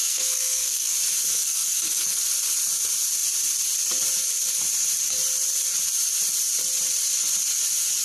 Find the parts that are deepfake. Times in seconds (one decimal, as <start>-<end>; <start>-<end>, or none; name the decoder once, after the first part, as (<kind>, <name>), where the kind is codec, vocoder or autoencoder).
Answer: 0.0-0.9 (codec, SNAC); 1.3-2.2